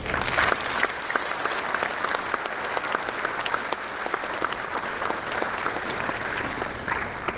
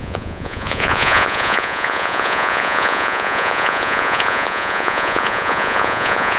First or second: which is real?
first